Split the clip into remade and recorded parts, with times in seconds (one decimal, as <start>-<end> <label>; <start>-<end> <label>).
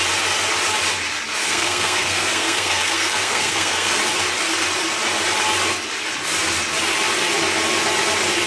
0.0-1.4 recorded; 1.4-4.0 remade; 4.0-8.5 recorded